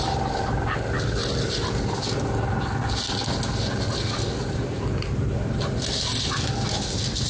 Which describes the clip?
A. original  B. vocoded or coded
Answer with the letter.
A